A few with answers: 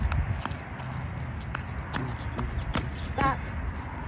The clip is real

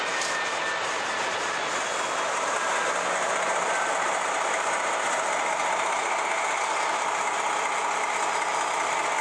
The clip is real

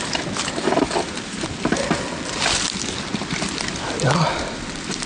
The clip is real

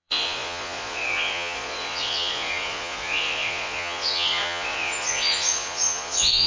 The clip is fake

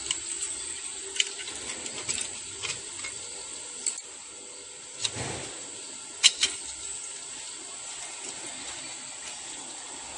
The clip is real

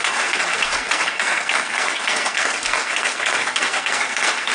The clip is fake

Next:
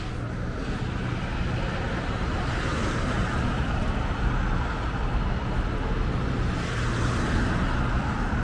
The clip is real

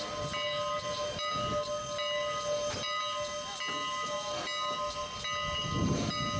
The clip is real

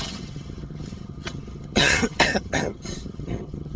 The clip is fake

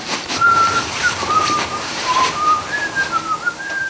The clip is fake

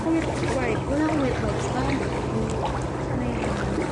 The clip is real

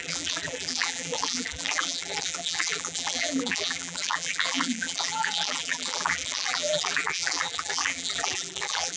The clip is fake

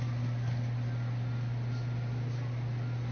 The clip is real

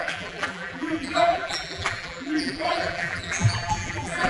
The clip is fake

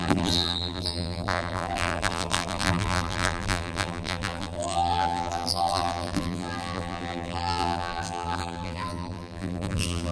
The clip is fake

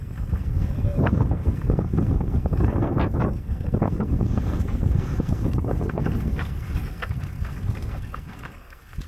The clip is fake